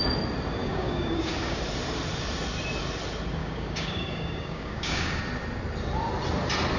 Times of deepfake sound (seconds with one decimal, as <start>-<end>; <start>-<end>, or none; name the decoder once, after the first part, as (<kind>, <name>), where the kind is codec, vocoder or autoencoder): 0.6-1.6 (codec, DAC); 3.4-5.2